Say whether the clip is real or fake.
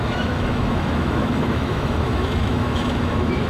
fake